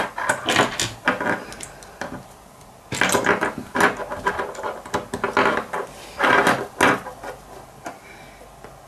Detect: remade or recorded recorded